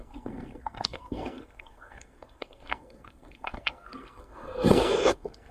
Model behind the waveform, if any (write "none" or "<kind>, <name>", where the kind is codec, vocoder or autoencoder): codec, SNAC